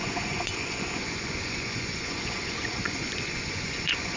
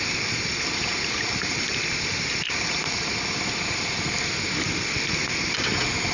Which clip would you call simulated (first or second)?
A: first